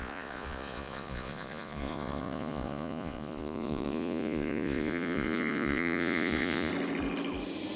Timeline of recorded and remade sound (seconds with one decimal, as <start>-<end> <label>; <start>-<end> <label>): 0.0-6.7 remade; 6.7-7.8 recorded